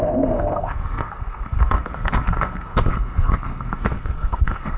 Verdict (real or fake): fake